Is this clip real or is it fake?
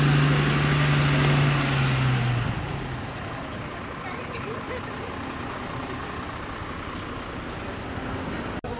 real